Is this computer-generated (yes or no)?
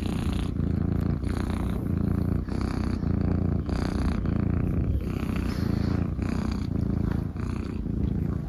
no